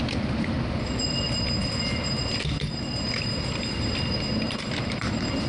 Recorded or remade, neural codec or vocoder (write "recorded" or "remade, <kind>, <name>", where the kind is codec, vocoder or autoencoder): recorded